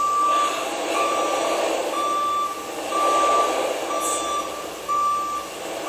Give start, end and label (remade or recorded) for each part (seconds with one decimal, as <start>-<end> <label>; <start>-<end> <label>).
0.0-5.9 recorded